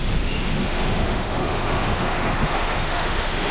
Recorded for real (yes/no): no